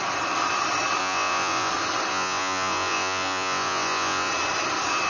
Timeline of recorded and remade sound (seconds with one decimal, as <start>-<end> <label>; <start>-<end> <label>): 0.0-1.0 recorded; 1.0-1.7 remade; 1.7-2.1 recorded; 2.1-4.3 remade; 4.3-5.1 recorded

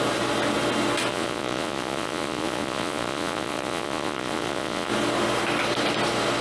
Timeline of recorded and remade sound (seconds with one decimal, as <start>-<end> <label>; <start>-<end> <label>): 0.0-1.1 recorded; 1.1-4.9 remade; 4.9-6.4 recorded

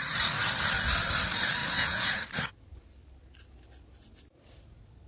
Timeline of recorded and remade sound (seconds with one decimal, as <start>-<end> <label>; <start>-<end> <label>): 0.0-1.6 recorded; 1.6-2.2 remade; 2.2-5.1 recorded